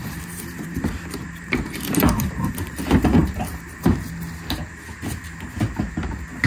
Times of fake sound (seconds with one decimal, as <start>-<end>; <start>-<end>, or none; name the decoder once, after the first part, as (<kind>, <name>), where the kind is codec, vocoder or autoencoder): 0.0-3.9 (vocoder, BigVGAN v2)